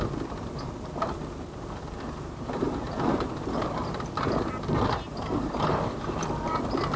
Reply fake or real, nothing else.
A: real